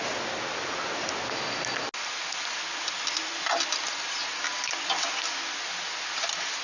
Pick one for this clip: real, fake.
real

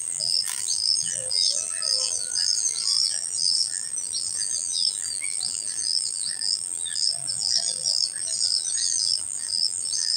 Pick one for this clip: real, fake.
fake